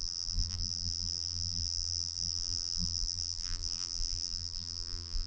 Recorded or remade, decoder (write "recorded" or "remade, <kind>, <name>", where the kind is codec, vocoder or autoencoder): remade, vocoder, BigVGAN v2